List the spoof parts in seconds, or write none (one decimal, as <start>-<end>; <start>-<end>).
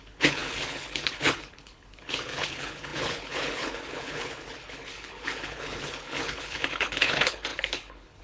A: 0.0-8.2